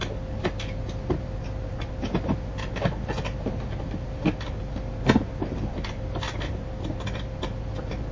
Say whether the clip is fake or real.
real